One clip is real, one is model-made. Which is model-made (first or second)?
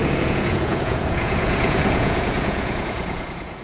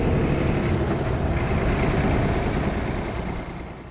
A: first